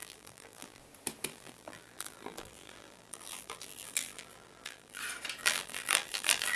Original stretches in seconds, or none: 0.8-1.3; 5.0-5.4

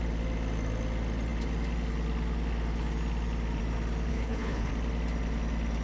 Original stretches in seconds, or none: 0.0-4.1; 4.7-5.8